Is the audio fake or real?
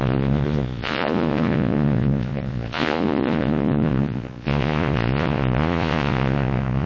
fake